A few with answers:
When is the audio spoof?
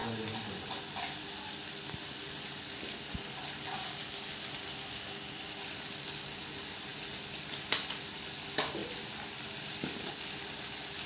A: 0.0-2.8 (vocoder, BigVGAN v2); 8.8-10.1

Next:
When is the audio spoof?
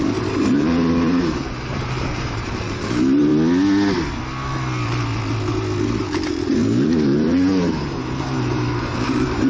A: 0.0-3.3 (vocoder, BigVGAN v2); 6.0-9.5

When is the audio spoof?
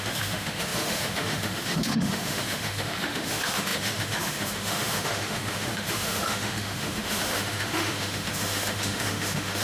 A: 0.0-9.6 (autoencoder, DAC-VAE)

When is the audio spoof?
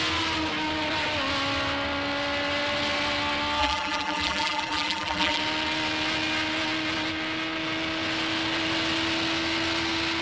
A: 3.6-5.4 (vocoder, BigVGAN v2)